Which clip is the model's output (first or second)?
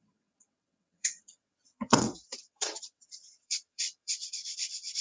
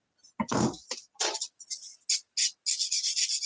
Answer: first